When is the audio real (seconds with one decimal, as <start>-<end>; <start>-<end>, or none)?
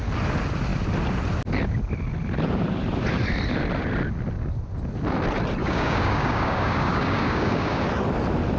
0.0-5.6; 7.8-8.6